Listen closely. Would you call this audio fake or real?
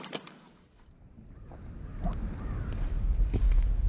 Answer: real